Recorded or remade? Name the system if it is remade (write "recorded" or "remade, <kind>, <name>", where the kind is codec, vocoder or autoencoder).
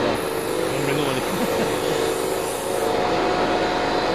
recorded